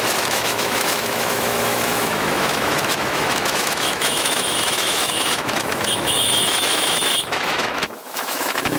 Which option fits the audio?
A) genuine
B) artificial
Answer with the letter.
B